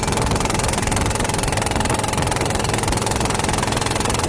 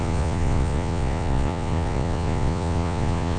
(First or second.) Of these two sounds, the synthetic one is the second